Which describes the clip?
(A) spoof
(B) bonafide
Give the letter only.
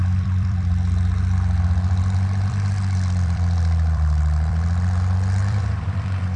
A